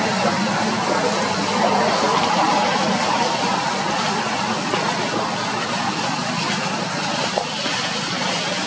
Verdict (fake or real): real